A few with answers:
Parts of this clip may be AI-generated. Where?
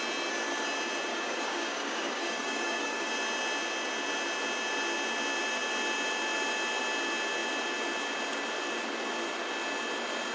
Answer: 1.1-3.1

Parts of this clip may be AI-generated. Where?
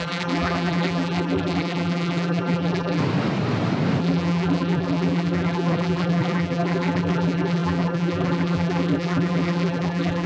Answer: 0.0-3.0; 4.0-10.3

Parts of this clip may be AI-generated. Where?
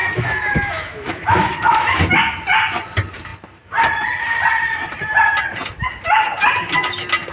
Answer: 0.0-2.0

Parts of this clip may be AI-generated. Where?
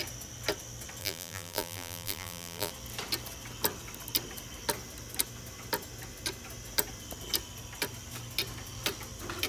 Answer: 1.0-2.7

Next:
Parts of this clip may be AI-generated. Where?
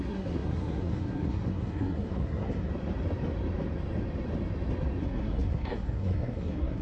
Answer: 0.0-2.7; 5.0-6.8